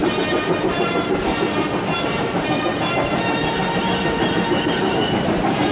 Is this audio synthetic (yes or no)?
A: yes